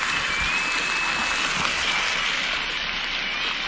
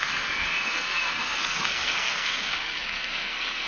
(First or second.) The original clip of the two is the first